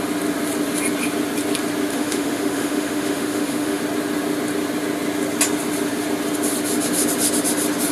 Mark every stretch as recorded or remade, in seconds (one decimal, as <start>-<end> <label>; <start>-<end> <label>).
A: 0.0-1.9 recorded; 1.9-3.8 remade; 3.8-7.9 recorded